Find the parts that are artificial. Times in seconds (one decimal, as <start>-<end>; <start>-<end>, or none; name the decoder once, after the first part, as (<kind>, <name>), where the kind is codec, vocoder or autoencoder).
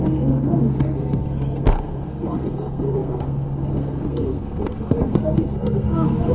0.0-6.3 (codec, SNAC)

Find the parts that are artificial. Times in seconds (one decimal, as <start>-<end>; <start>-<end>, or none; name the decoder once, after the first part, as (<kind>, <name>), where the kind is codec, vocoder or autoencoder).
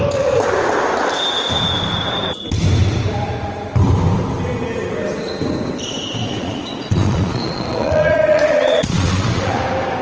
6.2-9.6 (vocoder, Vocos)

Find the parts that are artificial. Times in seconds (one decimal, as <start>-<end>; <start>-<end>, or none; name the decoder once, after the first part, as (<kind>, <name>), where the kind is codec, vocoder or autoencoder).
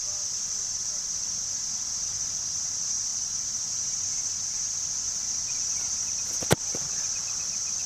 none